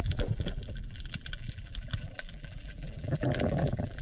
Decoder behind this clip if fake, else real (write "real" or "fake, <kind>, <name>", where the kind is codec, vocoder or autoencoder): fake, vocoder, BigVGAN v2